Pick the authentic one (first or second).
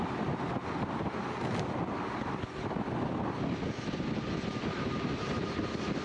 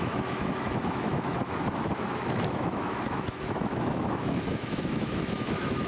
first